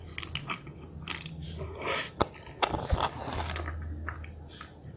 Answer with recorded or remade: recorded